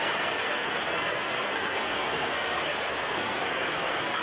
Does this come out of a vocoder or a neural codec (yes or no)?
yes